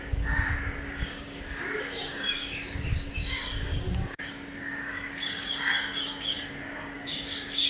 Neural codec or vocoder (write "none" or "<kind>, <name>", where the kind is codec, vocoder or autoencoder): codec, DAC